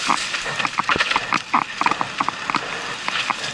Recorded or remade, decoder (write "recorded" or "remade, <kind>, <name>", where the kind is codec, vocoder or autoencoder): recorded